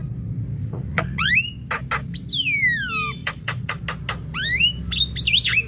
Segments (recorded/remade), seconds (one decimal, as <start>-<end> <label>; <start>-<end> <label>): 0.0-0.6 recorded; 0.6-1.3 remade; 1.3-3.2 recorded; 3.2-3.8 remade; 3.8-5.7 recorded